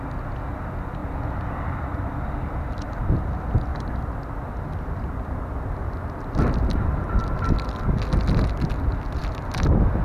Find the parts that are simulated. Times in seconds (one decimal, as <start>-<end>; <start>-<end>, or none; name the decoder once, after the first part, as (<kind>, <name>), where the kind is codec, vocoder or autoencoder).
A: 3.7-7.1 (vocoder, BigVGAN v2)